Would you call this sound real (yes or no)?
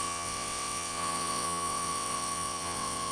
no